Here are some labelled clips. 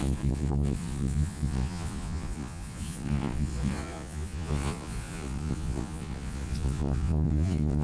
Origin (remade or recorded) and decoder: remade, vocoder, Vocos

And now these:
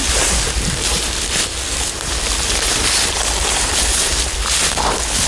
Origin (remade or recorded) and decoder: recorded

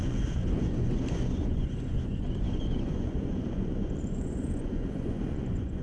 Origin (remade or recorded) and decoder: remade, vocoder, Vocos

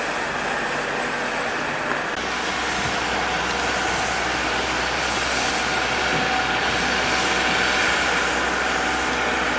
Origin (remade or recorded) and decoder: recorded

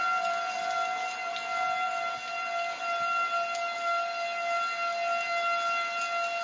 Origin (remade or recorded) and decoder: recorded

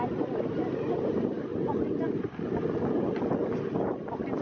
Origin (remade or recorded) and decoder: recorded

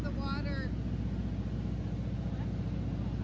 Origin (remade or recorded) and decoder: recorded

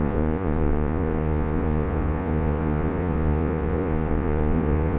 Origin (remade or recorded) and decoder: remade, vocoder, Vocos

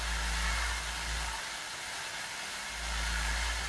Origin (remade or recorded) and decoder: recorded